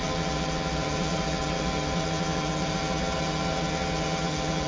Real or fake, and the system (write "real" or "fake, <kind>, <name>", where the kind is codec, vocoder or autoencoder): fake, vocoder, HiFi-GAN